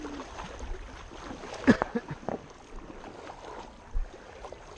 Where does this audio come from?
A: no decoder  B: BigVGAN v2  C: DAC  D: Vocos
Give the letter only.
B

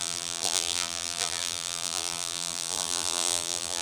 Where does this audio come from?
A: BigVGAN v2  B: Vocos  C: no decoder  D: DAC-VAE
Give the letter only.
A